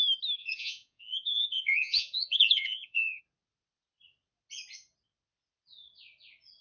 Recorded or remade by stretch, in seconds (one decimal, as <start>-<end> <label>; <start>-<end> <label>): 0.0-0.4 recorded; 0.4-3.2 remade; 3.2-6.6 recorded